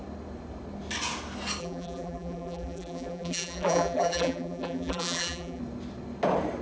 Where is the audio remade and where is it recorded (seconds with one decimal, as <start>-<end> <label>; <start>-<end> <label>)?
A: 0.0-1.6 recorded; 1.6-5.6 remade; 5.6-6.6 recorded